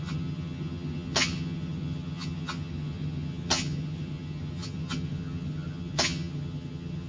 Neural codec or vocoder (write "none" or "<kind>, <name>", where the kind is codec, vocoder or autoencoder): vocoder, HiFi-GAN